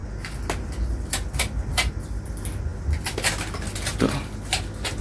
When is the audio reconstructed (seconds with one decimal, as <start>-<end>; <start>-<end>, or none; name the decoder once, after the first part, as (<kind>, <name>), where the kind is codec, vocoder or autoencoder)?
none

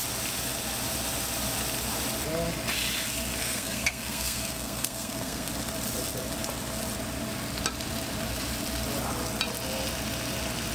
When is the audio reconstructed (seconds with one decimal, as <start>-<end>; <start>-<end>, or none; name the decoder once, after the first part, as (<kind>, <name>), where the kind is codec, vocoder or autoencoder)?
3.4-5.5 (codec, SNAC)

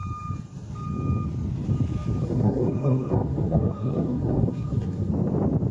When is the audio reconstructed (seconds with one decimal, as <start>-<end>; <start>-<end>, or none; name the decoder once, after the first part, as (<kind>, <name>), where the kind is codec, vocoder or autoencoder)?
2.2-5.1 (codec, SNAC)

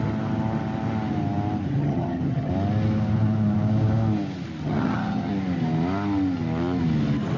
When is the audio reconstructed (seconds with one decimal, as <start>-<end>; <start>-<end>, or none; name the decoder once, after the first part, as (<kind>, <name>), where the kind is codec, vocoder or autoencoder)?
1.7-2.5 (vocoder, HiFi-GAN); 4.6-5.3

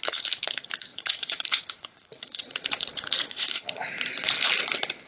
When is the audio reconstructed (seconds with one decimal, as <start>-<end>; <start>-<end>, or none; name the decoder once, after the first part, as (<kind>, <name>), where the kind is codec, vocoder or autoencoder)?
0.9-4.0 (vocoder, Vocos)

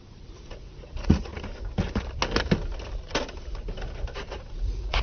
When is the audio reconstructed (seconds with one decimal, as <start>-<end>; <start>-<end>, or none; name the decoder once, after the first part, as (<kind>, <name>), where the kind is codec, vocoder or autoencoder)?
0.0-1.3 (vocoder, Vocos); 4.3-5.0